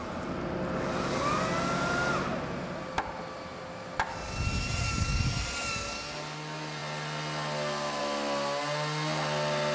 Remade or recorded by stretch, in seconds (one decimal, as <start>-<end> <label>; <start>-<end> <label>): 0.0-9.7 recorded